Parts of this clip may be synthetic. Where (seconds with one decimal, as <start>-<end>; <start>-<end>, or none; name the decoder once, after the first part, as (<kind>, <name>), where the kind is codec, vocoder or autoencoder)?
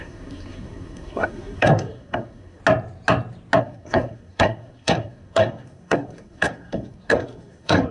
0.0-2.6 (codec, SNAC); 3.6-7.9